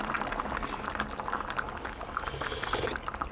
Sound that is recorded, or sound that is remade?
recorded